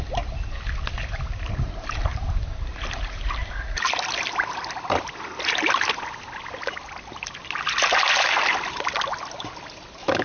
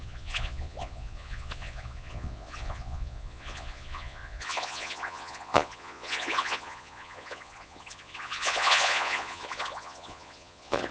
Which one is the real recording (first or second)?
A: first